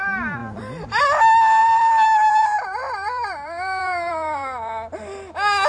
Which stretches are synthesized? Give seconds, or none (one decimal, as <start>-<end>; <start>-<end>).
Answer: 0.4-1.0; 1.6-5.0